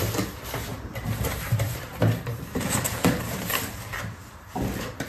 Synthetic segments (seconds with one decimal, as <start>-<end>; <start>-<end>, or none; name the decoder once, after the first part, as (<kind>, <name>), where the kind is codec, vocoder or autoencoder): 0.7-3.5 (vocoder, BigVGAN v2)